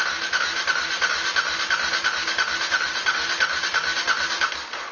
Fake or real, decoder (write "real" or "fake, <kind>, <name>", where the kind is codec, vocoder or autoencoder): real